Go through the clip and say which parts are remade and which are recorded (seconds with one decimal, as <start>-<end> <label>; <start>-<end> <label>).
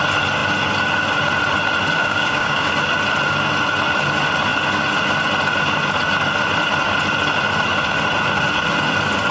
0.0-2.0 recorded; 2.0-2.7 remade; 2.7-9.3 recorded